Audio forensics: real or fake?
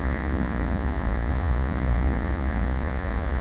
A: fake